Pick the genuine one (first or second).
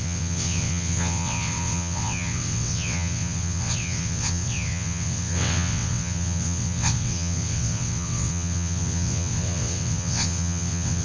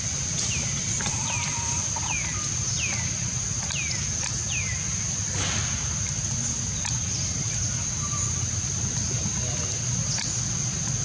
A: second